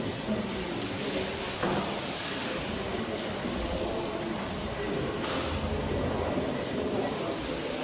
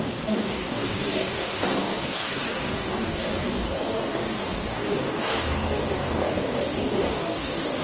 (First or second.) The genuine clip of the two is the first